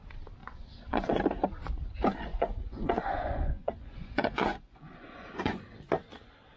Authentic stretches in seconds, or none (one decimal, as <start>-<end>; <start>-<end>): 0.0-0.4; 1.2-2.3; 5.6-6.6